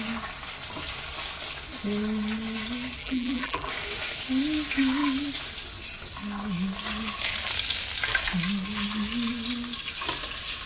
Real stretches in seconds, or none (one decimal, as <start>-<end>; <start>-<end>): 0.0-3.0; 3.7-10.7